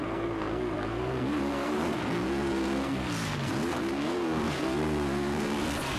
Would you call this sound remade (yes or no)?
yes